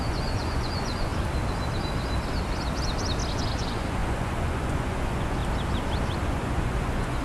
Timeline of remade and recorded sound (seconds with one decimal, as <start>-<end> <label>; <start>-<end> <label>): 0.0-1.1 remade; 1.1-3.3 recorded; 3.3-5.4 remade; 5.4-6.2 recorded; 6.2-7.2 remade